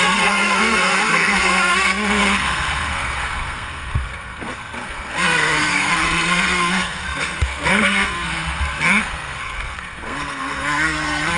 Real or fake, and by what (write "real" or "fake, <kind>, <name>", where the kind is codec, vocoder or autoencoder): fake, codec, SNAC